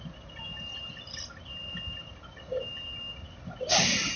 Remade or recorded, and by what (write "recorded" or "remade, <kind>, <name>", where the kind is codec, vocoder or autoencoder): recorded